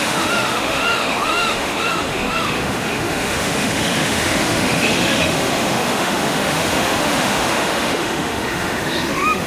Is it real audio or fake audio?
fake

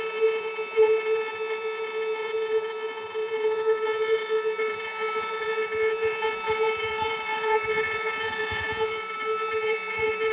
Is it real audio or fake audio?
fake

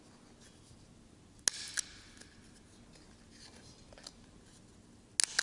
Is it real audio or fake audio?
real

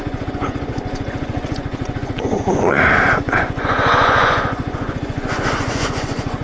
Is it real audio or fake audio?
fake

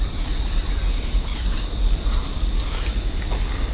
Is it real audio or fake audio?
real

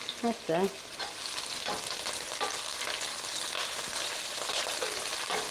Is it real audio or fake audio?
real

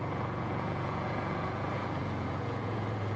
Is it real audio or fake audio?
fake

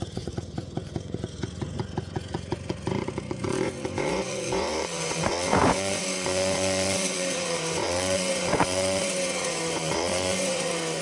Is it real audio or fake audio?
fake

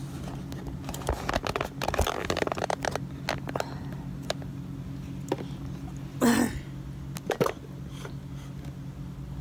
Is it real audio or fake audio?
real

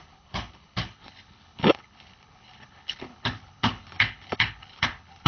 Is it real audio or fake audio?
fake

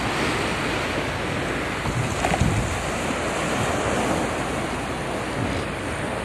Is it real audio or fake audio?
real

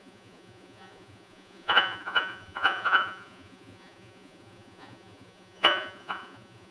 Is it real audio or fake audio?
fake